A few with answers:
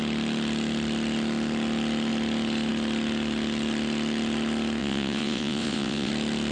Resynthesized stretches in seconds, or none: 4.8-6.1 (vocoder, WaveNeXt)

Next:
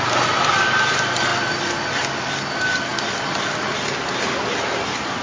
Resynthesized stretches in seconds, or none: none

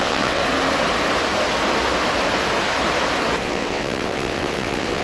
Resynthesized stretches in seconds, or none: 0.0-0.4 (vocoder, WaveNeXt); 3.4-5.0

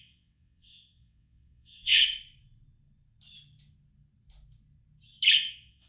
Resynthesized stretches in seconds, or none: 0.0-2.0 (vocoder, WaveNeXt); 5.5-5.9

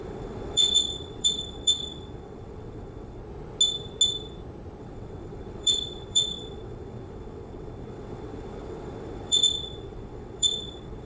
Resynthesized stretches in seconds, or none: 0.0-3.2 (vocoder, WaveNeXt); 4.8-11.1

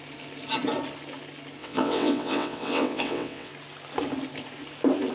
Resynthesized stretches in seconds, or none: 1.6-3.5 (vocoder, WaveNeXt)

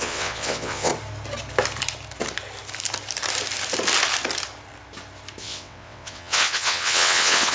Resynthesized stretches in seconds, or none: 0.0-0.9 (vocoder, WaveNeXt); 5.4-7.5